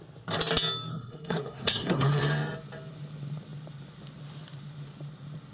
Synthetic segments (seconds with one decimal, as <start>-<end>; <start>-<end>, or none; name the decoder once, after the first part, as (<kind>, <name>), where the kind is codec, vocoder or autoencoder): 0.9-2.2 (codec, SNAC)